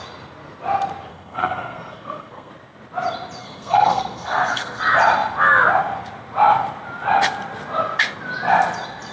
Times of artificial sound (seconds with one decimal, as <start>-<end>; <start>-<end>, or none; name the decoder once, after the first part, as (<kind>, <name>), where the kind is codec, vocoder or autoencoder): 1.1-2.5 (codec, SNAC); 3.4-4.8